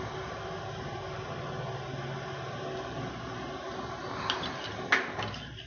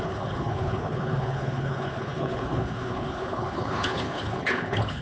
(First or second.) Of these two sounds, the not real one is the second